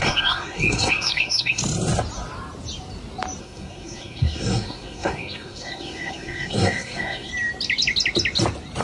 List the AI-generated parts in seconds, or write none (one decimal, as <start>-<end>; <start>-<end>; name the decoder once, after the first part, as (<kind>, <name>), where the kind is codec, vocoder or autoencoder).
0.0-1.6 (codec, SNAC); 3.4-7.3